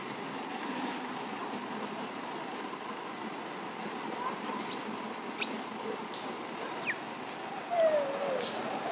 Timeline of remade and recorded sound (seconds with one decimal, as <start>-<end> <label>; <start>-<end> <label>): 0.0-1.4 recorded; 1.4-2.2 remade; 2.2-8.9 recorded